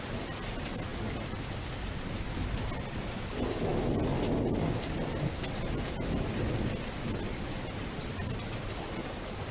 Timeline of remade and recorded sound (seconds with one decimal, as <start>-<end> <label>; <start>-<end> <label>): 0.0-9.5 recorded